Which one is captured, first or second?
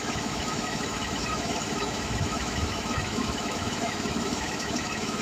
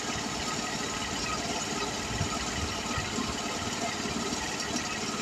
second